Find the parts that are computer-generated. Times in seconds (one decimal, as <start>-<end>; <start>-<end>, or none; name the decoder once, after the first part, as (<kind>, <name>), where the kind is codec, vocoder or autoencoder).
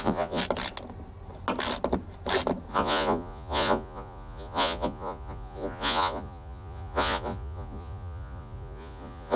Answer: 0.0-0.4 (vocoder, Vocos); 2.7-9.4